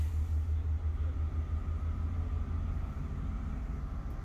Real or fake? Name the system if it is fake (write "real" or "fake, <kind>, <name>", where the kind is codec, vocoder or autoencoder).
real